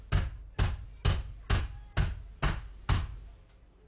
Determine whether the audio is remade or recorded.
recorded